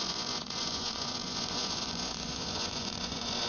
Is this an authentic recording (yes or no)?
no